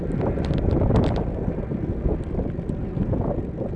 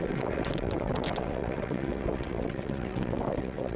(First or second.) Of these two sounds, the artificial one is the second